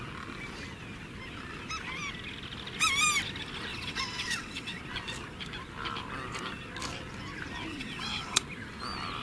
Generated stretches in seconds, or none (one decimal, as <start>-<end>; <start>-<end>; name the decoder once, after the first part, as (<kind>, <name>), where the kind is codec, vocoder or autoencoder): 3.7-4.8 (vocoder, WaveNeXt); 7.7-8.4